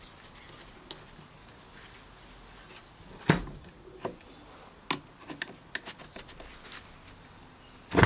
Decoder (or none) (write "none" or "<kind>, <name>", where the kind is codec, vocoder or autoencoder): none